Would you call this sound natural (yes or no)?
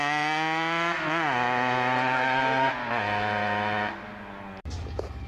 yes